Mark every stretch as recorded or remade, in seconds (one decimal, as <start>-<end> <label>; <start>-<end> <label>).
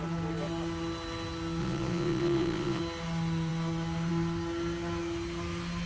0.0-1.6 recorded; 1.6-2.8 remade; 2.8-5.9 recorded